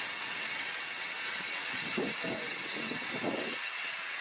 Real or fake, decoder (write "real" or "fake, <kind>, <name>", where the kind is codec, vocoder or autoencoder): fake, vocoder, WaveNeXt